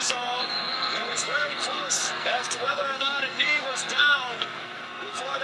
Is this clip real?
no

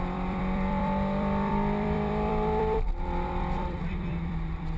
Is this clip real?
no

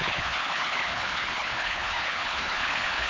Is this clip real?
no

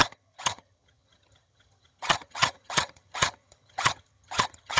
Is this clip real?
no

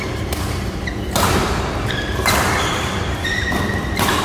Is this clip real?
no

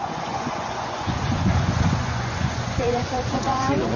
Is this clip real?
no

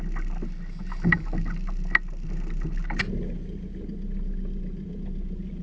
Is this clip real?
yes